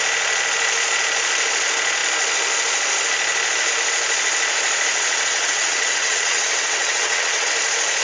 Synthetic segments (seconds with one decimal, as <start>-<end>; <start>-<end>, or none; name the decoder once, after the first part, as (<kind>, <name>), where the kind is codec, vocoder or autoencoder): 4.9-7.5 (vocoder, WaveNeXt)